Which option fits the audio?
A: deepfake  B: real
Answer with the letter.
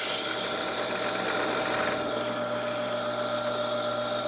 B